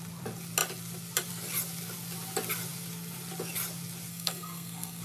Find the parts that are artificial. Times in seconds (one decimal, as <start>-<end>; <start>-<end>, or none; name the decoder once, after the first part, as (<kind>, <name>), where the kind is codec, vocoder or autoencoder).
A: 4.1-5.0 (codec, SNAC)